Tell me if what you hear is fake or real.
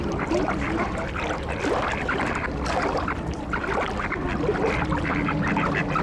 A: fake